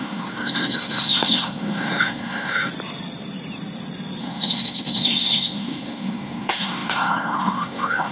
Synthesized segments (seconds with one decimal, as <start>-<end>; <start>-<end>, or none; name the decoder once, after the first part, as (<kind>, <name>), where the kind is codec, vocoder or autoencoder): 0.0-2.7 (codec, SNAC); 4.2-8.1